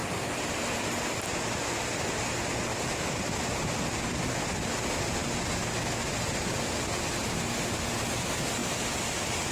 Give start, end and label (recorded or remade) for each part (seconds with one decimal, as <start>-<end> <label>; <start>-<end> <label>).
0.0-2.7 recorded; 2.7-4.2 remade; 4.2-9.5 recorded